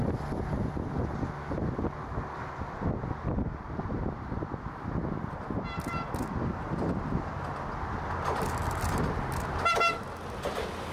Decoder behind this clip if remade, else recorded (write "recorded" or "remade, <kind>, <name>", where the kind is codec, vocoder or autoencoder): recorded